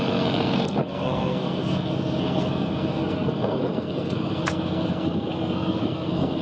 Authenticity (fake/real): fake